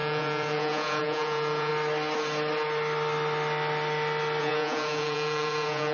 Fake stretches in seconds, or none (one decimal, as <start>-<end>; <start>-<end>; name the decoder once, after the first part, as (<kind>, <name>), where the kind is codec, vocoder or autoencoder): 0.0-1.7 (vocoder, Vocos); 4.4-5.9